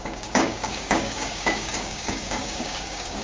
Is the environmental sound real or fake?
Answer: fake